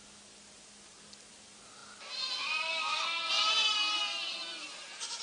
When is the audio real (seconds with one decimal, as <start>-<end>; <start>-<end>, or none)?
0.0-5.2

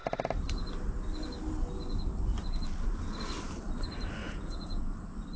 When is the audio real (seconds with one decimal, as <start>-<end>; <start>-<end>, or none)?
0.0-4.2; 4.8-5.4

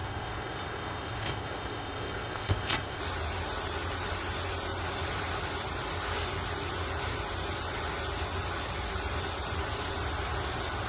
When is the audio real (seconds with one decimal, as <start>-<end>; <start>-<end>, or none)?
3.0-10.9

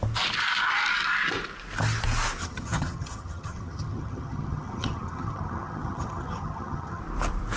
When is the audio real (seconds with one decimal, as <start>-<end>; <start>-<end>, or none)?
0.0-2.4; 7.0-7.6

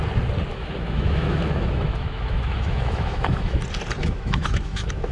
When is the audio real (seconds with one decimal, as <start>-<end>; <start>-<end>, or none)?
0.0-0.5; 3.6-4.0

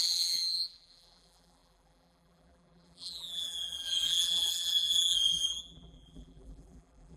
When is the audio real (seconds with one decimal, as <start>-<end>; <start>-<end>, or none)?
none

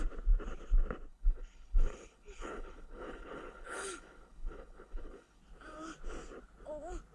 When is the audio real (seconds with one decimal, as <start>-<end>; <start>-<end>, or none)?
0.0-1.1; 5.4-7.1